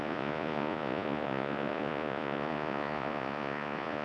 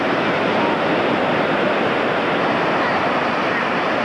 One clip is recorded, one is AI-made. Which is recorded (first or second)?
second